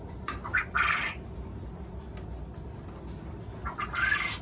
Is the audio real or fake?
fake